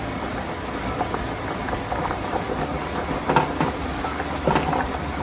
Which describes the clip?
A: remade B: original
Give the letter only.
B